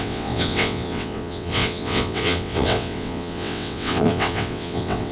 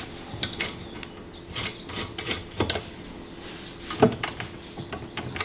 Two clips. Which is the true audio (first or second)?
second